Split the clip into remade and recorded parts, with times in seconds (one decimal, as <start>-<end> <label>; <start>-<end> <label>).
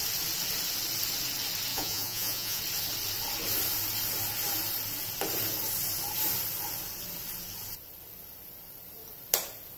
0.0-1.7 recorded; 1.7-2.6 remade; 2.6-9.8 recorded